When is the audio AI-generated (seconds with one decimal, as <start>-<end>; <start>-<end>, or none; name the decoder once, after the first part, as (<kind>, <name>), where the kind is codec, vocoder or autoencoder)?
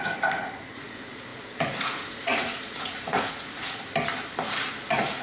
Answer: 0.0-3.8 (vocoder, Vocos); 4.6-5.2